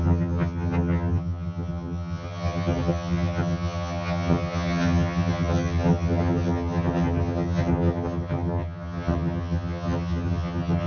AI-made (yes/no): yes